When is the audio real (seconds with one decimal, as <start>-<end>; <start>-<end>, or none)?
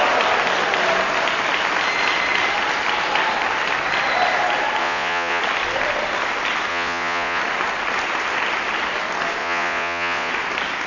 0.0-4.8; 5.4-6.7; 7.4-9.4; 10.3-10.9